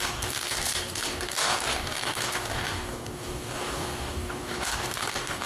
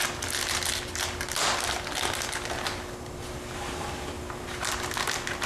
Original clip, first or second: second